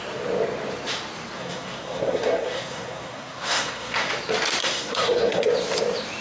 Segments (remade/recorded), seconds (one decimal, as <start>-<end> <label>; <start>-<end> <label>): 0.0-1.4 recorded; 1.4-4.1 remade; 4.1-4.6 recorded; 4.6-5.5 remade; 5.5-6.2 recorded